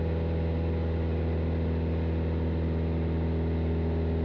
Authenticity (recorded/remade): recorded